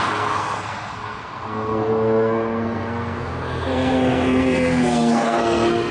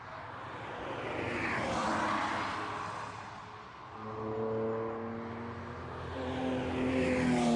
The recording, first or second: second